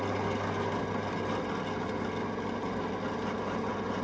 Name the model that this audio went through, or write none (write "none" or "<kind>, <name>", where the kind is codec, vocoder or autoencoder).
none